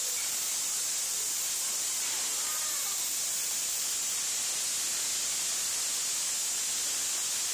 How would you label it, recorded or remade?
recorded